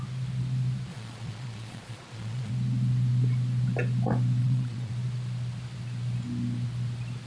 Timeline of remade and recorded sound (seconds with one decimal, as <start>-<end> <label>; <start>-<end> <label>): 0.0-0.9 recorded; 0.9-2.5 remade; 2.5-4.4 recorded; 4.4-4.9 remade; 4.9-7.3 recorded

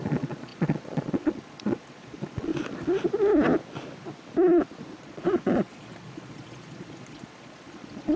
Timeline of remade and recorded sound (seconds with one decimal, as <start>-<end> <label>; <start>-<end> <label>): 0.0-2.5 remade; 2.5-5.0 recorded; 5.0-8.2 remade

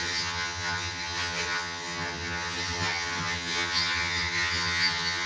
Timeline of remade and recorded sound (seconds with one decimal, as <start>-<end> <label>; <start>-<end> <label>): 0.0-5.3 remade

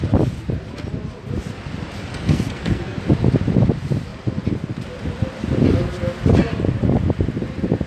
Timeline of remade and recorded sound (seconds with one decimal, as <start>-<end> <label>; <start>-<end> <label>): 0.0-2.1 recorded; 2.1-3.0 remade; 3.0-7.9 recorded

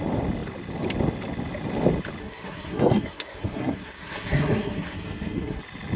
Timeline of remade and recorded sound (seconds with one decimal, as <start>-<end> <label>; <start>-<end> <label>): 0.0-2.2 recorded; 2.2-5.6 remade; 5.6-6.0 recorded